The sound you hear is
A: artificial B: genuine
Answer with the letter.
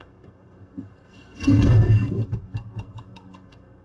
A